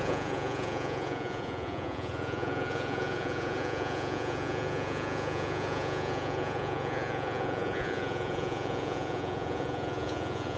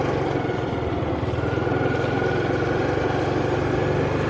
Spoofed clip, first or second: first